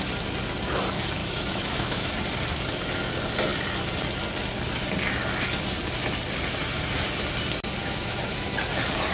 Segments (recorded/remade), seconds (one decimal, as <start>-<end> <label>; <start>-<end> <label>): 0.0-1.2 recorded; 1.2-2.1 remade; 2.1-7.8 recorded; 7.8-8.5 remade; 8.5-9.1 recorded